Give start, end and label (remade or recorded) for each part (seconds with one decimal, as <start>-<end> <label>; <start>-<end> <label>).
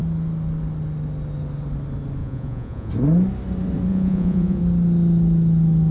0.0-2.2 recorded; 2.2-2.9 remade; 2.9-3.9 recorded; 3.9-4.6 remade; 4.6-5.9 recorded